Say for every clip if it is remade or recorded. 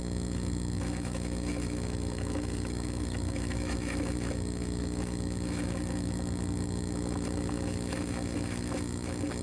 remade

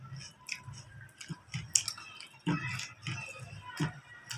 recorded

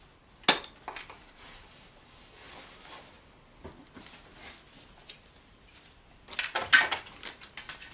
recorded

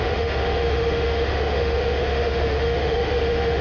remade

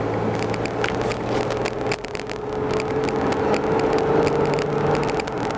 recorded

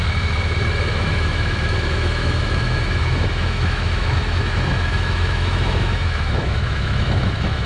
remade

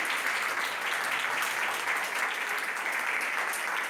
recorded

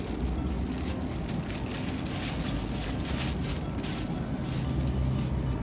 recorded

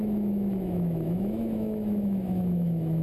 remade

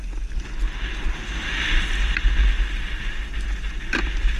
recorded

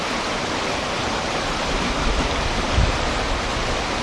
recorded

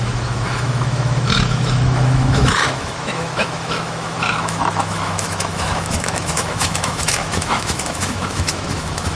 remade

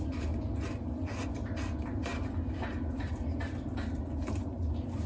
recorded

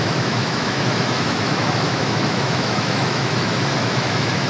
remade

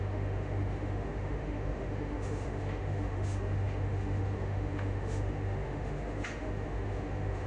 remade